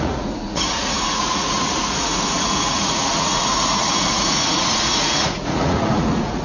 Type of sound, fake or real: fake